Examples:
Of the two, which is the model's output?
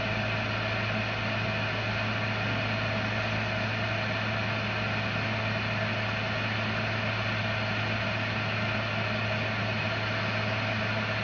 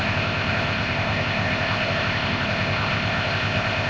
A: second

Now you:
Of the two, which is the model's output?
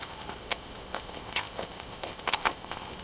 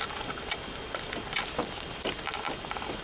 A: first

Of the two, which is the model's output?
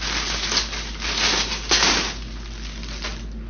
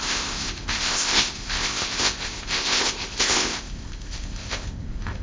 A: second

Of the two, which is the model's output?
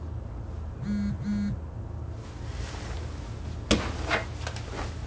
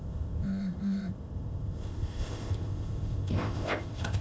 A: second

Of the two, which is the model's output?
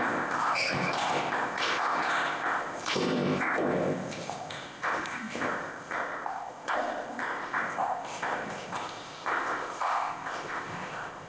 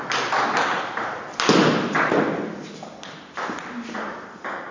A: first